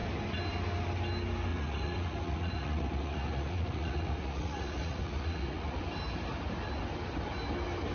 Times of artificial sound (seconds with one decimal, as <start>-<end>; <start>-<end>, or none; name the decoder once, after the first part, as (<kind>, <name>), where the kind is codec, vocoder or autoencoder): 1.5-5.8 (vocoder, Vocos)